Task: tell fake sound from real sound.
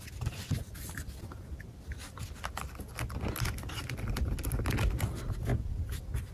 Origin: real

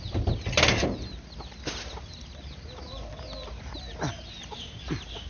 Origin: real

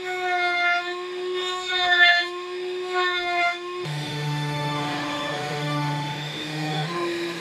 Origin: fake